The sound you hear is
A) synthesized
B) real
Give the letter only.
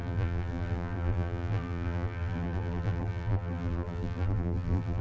A